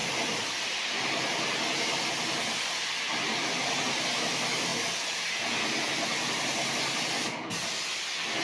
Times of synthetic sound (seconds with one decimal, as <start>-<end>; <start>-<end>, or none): none